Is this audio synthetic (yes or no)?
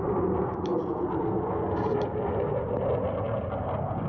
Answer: no